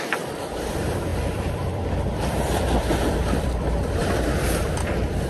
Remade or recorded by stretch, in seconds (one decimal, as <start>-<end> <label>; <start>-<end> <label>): 0.0-4.0 remade; 4.0-4.6 recorded; 4.6-5.3 remade